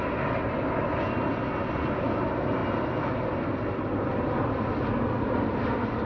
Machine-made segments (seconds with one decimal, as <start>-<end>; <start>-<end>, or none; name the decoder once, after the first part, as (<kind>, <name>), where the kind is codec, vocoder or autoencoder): none